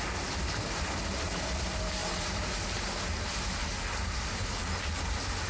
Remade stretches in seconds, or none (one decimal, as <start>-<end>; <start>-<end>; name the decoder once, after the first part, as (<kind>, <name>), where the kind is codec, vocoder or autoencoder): 2.0-2.5 (vocoder, BigVGAN v2); 3.6-4.6